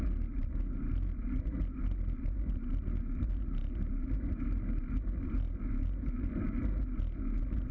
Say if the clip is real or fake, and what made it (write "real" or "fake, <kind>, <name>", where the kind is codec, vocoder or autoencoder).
real